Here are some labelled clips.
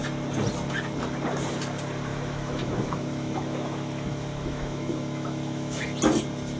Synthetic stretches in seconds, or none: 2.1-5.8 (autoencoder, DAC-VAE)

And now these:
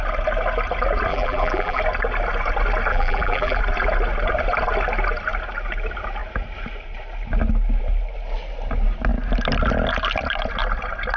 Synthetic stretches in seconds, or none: 1.1-1.8 (vocoder, BigVGAN v2); 2.9-3.6

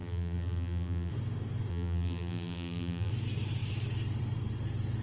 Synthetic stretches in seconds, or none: 0.0-1.1 (vocoder, BigVGAN v2); 1.7-3.1